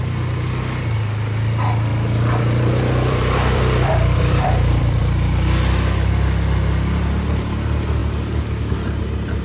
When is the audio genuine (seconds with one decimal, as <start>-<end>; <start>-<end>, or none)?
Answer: 0.0-1.9; 5.0-9.4